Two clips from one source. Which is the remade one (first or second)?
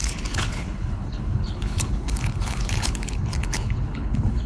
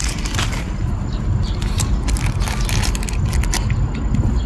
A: first